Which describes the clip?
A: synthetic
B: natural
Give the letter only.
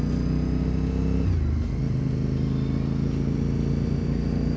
B